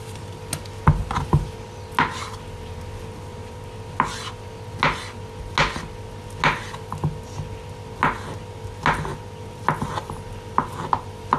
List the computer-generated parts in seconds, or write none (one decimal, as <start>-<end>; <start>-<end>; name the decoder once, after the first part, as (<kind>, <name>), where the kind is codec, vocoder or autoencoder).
none